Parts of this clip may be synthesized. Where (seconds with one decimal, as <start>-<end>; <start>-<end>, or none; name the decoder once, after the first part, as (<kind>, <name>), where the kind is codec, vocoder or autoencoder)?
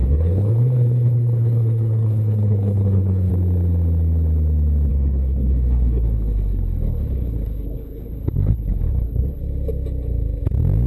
0.0-3.3 (codec, HILCodec); 4.9-9.4